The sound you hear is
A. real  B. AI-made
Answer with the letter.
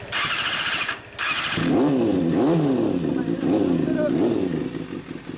A